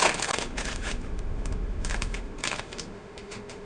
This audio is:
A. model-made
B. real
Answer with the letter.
A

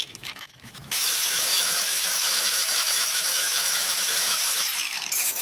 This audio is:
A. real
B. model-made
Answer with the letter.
B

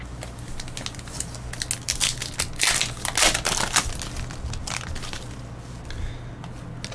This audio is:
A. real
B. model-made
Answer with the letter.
A